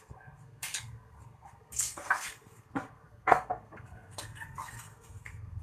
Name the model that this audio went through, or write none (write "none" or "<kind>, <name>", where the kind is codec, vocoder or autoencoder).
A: codec, SNAC